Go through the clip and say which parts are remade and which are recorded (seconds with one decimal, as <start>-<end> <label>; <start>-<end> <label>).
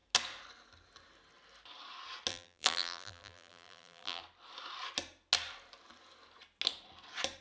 0.0-2.3 recorded; 2.3-4.2 remade; 4.2-7.4 recorded